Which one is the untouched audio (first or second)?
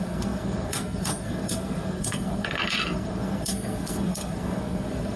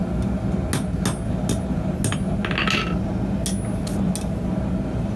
second